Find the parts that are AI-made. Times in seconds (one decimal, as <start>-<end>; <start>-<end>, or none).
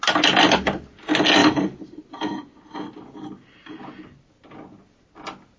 none